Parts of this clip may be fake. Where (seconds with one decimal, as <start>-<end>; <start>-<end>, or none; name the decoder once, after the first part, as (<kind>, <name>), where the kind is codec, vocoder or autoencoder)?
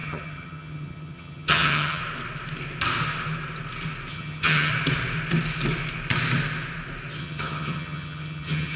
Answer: 0.0-2.0 (vocoder, HiFi-GAN); 4.1-4.7; 7.2-8.8